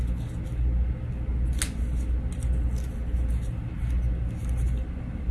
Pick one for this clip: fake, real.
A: real